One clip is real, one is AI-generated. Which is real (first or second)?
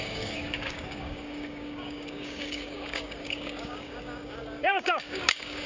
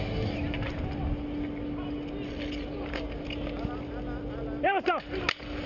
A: second